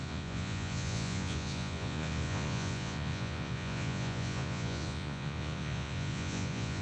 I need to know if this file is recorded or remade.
remade